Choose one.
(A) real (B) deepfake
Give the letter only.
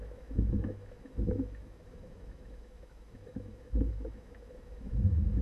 B